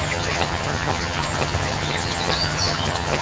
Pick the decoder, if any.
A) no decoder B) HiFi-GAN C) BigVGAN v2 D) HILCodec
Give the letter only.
B